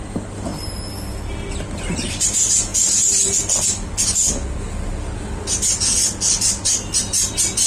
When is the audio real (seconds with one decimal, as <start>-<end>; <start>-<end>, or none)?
0.5-1.8; 2.7-7.3